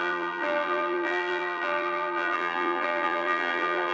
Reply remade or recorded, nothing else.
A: remade